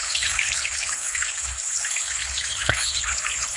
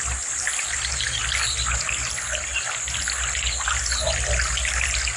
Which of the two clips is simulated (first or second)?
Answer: first